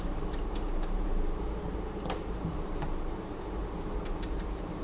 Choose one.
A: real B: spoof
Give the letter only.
B